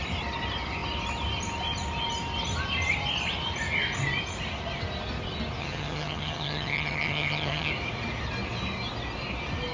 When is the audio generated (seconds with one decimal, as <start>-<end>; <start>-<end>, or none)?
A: 5.6-7.7